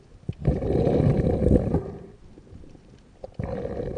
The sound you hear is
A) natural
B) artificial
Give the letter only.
A